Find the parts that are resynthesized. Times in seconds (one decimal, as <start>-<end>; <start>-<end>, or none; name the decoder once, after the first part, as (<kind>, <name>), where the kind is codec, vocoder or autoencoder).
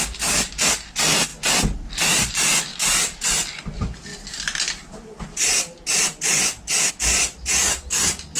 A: 1.3-2.3 (vocoder, BigVGAN v2); 2.7-3.4